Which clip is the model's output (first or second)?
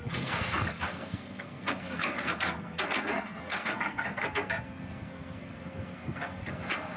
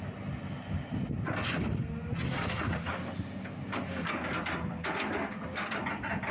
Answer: first